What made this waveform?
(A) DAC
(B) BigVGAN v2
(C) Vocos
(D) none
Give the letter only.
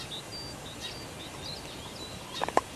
D